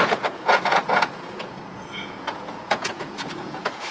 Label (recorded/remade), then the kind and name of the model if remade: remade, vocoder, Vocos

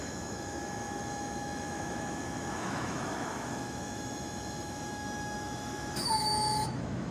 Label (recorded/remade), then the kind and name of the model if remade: remade, autoencoder, DAC-VAE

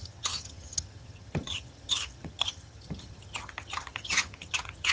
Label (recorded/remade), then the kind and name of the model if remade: remade, vocoder, HiFi-GAN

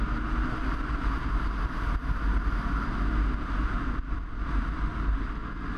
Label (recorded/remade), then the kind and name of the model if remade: recorded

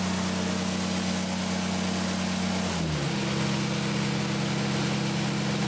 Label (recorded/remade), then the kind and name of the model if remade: recorded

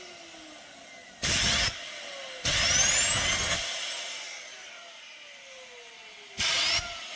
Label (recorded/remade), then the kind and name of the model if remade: recorded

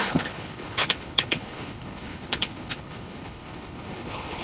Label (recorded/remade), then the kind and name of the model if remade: remade, codec, HILCodec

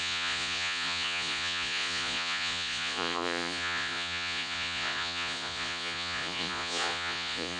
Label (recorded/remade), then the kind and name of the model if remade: remade, vocoder, Vocos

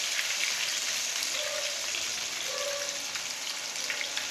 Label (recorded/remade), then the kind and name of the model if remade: remade, vocoder, BigVGAN v2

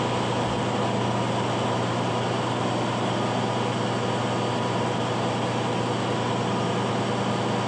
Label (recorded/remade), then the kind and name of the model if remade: recorded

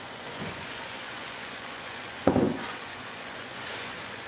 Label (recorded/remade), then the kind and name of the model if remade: remade, vocoder, Vocos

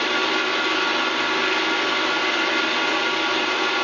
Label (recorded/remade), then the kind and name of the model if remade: recorded